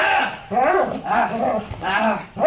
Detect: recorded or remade remade